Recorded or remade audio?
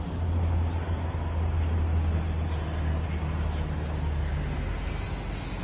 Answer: recorded